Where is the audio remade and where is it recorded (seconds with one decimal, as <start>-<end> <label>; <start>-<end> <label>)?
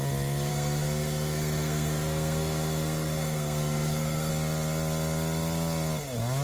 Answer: 0.0-0.5 recorded; 0.5-4.3 remade; 4.3-6.4 recorded